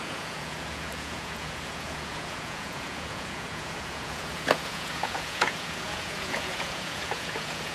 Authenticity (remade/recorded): remade